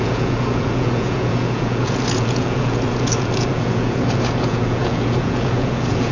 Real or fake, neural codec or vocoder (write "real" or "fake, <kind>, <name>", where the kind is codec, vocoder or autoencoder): fake, vocoder, Vocos